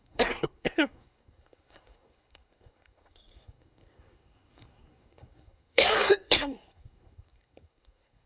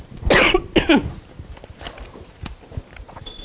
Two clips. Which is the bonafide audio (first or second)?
second